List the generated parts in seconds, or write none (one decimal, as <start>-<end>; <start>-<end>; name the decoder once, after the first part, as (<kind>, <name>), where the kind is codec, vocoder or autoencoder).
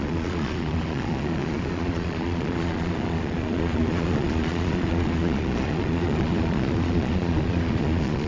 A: 0.0-8.3 (vocoder, Vocos)